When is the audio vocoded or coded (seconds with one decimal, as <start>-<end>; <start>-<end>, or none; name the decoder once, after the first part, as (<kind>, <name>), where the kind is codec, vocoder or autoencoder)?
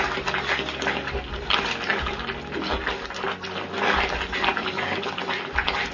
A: 4.5-5.2 (codec, DAC)